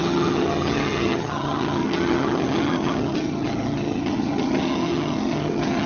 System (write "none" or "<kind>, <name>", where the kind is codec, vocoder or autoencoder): vocoder, HiFi-GAN